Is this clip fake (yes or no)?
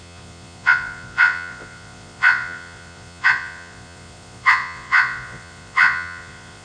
yes